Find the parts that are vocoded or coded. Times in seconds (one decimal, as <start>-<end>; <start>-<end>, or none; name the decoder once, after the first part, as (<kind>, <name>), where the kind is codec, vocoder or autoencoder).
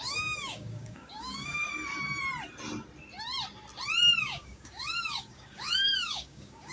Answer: 0.0-1.6 (codec, DAC); 4.2-6.7